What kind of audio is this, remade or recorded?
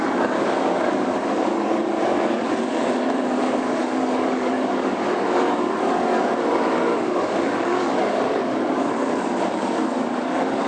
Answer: remade